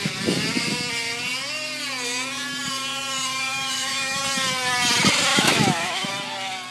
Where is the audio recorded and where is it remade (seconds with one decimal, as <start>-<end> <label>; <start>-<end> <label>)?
0.0-3.5 recorded; 3.5-4.2 remade; 4.2-5.3 recorded; 5.3-6.1 remade; 6.1-6.7 recorded